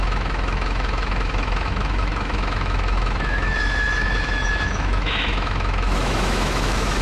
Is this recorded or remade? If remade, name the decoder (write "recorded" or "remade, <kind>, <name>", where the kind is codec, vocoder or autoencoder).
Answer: remade, autoencoder, DAC-VAE